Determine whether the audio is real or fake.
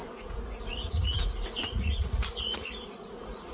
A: fake